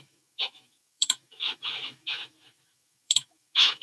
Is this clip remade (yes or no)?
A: yes